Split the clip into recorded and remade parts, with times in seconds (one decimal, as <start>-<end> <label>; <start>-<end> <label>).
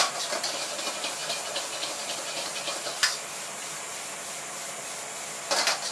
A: 0.0-5.9 recorded